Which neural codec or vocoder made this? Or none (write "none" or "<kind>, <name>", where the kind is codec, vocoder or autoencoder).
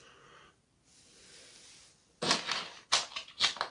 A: none